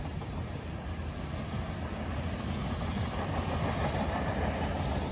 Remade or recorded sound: recorded